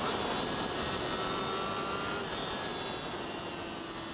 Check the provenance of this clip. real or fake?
real